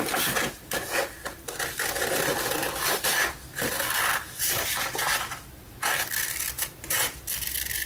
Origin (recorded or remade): recorded